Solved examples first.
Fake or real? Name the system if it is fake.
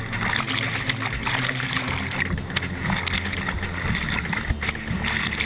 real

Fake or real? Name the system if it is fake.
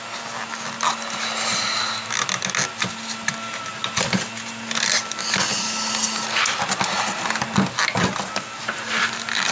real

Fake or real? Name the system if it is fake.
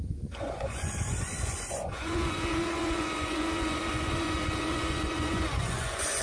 fake, vocoder, Vocos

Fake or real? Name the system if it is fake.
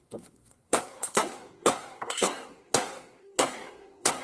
fake, codec, SNAC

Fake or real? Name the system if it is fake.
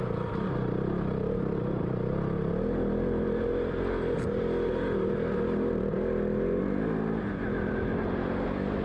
real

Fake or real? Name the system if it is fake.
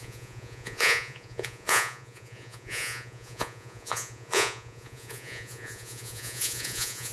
fake, vocoder, Vocos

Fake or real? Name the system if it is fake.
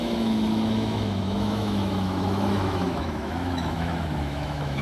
fake, autoencoder, DAC-VAE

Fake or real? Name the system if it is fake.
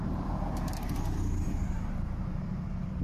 fake, vocoder, BigVGAN v2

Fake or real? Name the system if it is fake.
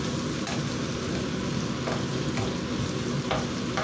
real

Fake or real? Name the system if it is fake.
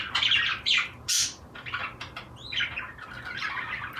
real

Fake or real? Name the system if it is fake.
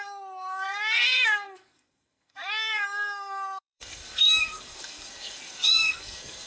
fake, codec, SNAC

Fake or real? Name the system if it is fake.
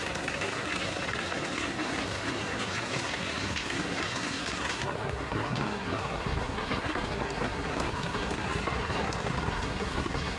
fake, codec, SNAC